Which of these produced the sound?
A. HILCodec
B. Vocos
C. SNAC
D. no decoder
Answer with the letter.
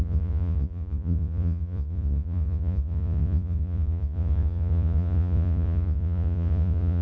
B